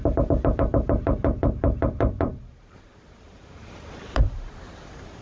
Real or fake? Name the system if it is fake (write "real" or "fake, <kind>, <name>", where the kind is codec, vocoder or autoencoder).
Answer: fake, vocoder, BigVGAN v2